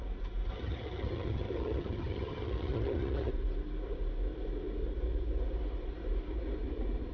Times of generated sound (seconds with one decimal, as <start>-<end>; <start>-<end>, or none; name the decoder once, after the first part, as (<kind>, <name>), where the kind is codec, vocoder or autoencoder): 0.5-3.3 (vocoder, HiFi-GAN)